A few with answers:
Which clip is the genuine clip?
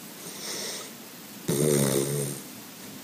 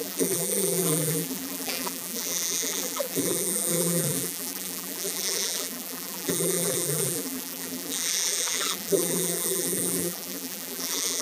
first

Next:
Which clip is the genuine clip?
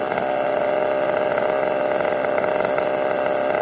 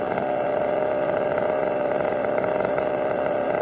first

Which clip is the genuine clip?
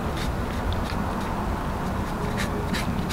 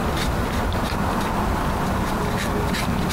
first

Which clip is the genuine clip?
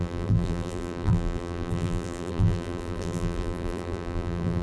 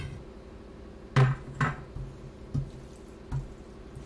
second